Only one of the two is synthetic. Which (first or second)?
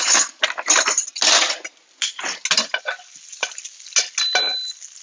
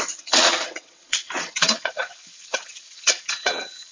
second